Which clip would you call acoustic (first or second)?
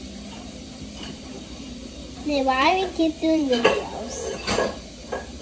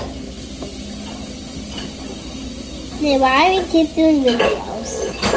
second